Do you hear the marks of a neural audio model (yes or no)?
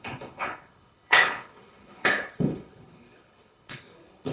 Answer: yes